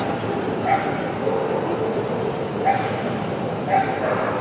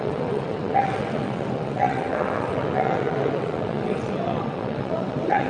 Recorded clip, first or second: first